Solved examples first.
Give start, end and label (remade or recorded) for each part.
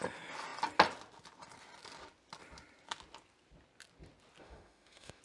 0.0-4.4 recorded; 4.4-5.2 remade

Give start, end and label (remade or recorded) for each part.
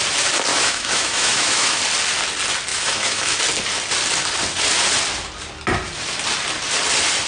0.0-0.5 recorded; 0.5-1.8 remade; 1.8-2.7 recorded; 2.7-3.4 remade; 3.4-7.3 recorded